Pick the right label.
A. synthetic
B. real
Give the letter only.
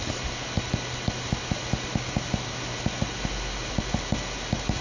B